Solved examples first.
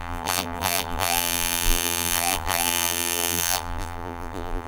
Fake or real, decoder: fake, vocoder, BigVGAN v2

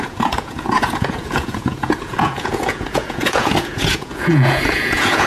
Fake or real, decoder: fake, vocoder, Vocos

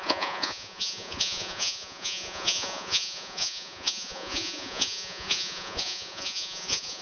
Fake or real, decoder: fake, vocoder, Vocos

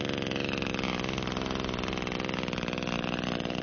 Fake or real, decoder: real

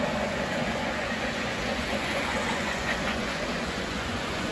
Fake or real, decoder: fake, vocoder, Vocos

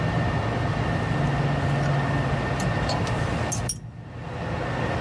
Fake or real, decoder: real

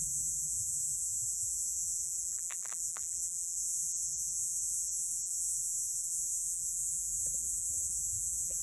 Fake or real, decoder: fake, vocoder, BigVGAN v2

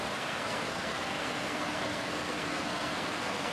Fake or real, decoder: fake, codec, SNAC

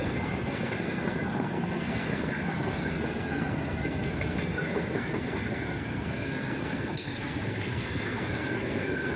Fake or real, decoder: fake, codec, SNAC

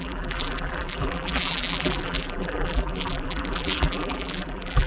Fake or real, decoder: fake, vocoder, BigVGAN v2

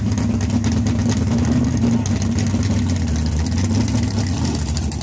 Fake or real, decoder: real